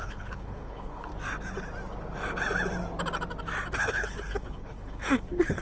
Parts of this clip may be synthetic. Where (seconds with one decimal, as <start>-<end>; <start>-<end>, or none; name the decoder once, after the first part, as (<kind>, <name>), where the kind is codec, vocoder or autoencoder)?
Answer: 0.0-1.1 (codec, HILCodec); 3.7-5.6